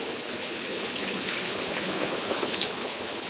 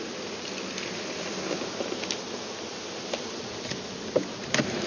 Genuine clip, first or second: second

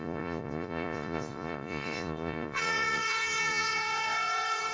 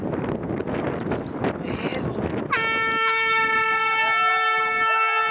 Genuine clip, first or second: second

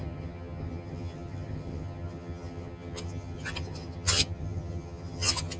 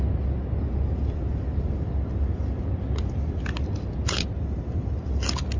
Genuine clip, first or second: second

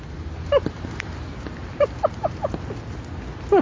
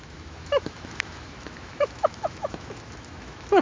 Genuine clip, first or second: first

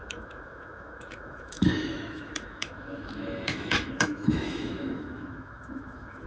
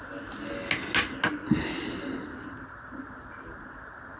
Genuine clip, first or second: second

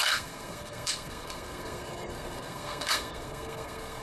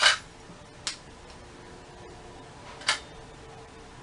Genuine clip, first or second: second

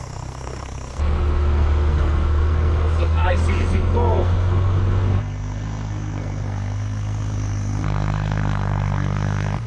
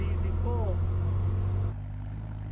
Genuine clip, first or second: second